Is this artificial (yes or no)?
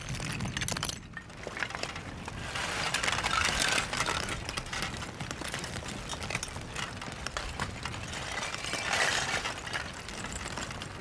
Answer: no